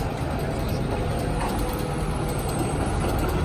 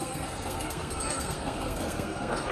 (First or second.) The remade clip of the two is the second